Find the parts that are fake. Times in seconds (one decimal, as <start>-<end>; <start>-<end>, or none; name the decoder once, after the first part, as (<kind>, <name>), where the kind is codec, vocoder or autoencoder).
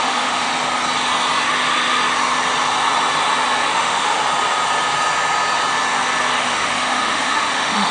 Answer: 0.0-0.5 (autoencoder, DAC-VAE); 3.7-4.2; 6.4-7.9